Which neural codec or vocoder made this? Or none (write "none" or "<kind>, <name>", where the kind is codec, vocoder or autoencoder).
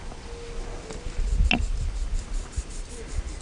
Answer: none